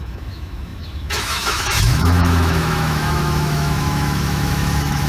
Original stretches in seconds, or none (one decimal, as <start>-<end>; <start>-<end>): none

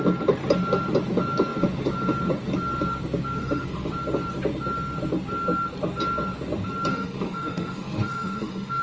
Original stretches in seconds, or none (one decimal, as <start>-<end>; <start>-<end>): 0.0-3.4; 3.9-6.9

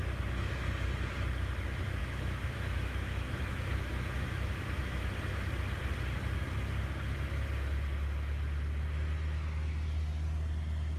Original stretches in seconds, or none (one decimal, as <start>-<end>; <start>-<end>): 0.0-2.0; 5.1-11.0

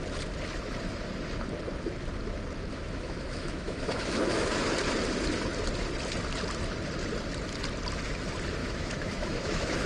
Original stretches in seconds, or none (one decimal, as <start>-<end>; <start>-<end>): 0.0-2.7; 4.7-8.6

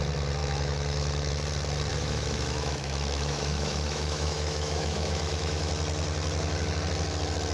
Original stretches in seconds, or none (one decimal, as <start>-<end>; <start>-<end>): 0.0-0.4; 1.3-1.9; 5.7-7.5

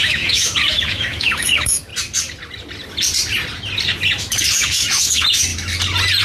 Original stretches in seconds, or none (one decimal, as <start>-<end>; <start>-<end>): 1.9-4.2; 5.5-6.2